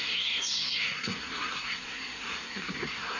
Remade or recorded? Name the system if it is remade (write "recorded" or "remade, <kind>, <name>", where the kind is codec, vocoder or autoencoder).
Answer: remade, codec, SNAC